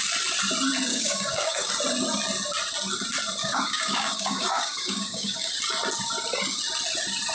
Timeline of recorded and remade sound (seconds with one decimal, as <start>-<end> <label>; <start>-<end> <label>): 0.0-0.9 recorded; 0.9-1.7 remade; 1.7-3.4 recorded; 3.4-5.5 remade; 5.5-7.3 recorded